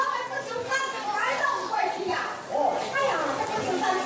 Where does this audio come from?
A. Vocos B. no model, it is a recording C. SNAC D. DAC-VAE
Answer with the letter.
B